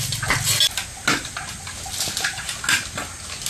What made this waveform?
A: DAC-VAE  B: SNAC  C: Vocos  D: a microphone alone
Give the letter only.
D